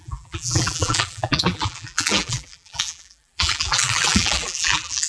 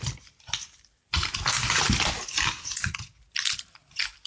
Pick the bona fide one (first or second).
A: second